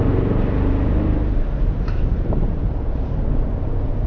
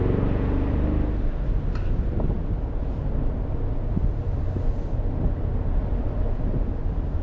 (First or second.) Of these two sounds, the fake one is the first